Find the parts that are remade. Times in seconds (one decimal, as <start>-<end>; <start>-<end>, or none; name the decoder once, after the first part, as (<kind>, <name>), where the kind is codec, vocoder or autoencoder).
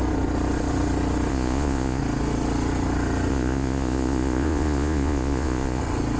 1.3-2.0 (vocoder, Vocos); 3.3-5.8